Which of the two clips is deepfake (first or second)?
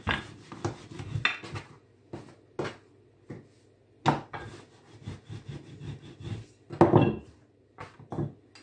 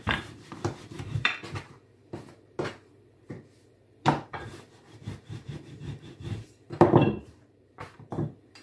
second